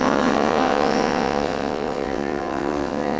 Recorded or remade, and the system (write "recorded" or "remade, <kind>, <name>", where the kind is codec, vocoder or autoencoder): remade, vocoder, WaveNeXt